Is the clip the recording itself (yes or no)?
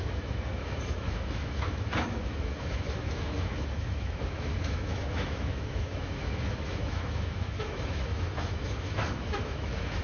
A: no